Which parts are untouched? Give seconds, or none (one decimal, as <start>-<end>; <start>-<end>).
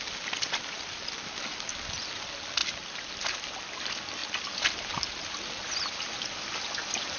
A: 0.0-7.2